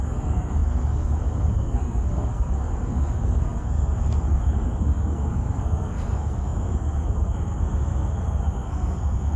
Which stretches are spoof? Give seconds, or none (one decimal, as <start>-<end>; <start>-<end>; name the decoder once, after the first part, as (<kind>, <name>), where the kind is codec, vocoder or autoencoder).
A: 0.0-9.4 (codec, SNAC)